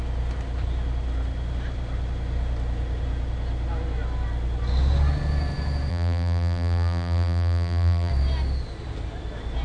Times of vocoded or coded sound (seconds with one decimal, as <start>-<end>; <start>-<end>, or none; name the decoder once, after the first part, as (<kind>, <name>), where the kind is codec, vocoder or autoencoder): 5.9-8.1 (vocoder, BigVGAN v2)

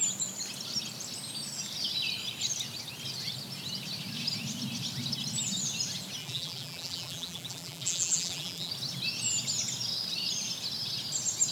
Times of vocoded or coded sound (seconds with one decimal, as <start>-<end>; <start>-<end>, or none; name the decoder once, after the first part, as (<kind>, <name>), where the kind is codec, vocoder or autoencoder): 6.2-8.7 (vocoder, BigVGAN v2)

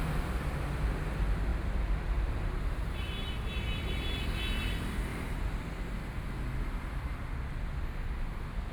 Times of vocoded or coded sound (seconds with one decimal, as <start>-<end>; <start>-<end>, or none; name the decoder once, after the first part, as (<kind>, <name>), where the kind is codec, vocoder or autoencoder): 1.5-3.3 (vocoder, BigVGAN v2); 5.1-5.6